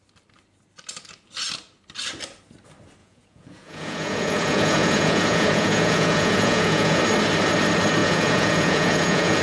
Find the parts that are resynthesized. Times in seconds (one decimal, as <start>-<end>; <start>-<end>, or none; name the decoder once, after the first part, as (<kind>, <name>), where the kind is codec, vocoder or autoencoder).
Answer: 3.0-7.0 (vocoder, Vocos); 8.0-9.4